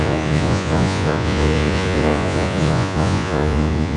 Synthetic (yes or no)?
yes